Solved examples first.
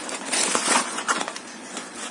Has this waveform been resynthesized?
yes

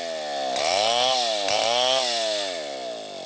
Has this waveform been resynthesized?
no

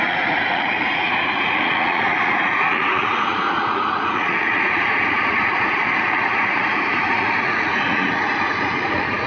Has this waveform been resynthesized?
yes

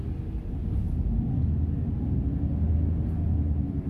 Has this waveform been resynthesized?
no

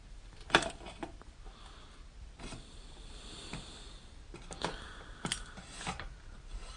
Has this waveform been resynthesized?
no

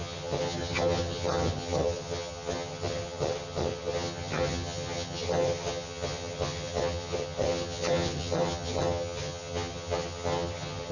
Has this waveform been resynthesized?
yes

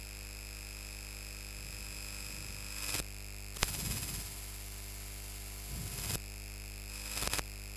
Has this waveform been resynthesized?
no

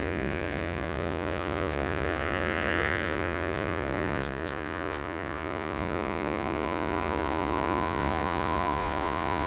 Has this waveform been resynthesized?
yes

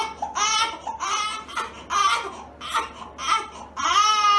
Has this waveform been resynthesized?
no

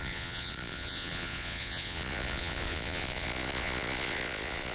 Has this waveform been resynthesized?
yes